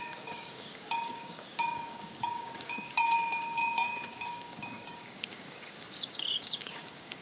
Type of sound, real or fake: fake